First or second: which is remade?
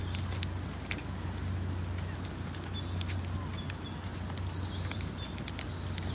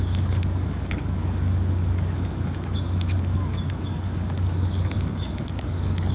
second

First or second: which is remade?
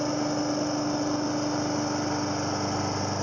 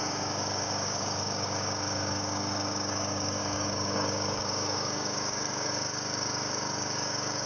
second